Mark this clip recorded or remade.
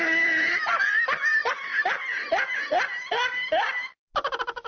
recorded